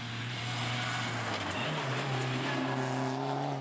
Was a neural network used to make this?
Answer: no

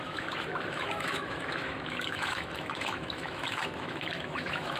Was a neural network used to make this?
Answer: yes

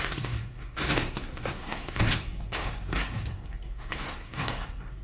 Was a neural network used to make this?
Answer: yes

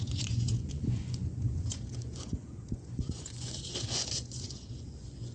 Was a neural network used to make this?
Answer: yes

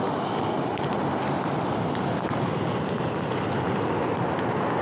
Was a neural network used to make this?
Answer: no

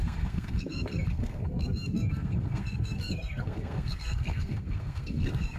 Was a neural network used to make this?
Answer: yes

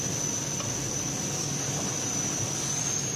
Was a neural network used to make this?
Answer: no